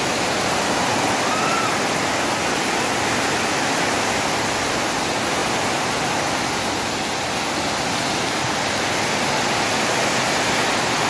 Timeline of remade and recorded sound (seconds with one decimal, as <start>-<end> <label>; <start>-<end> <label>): 0.0-11.1 recorded